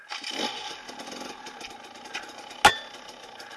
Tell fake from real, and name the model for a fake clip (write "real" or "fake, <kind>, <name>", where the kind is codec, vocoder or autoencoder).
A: real